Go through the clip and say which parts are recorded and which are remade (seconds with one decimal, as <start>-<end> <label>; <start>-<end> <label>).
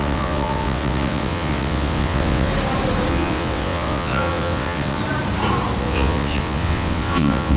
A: 0.0-2.5 remade; 2.5-3.1 recorded; 3.1-5.0 remade; 5.0-5.8 recorded; 5.8-7.6 remade